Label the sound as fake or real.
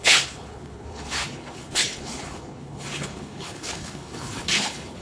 fake